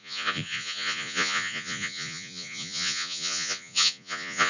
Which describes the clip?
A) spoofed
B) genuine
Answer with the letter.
A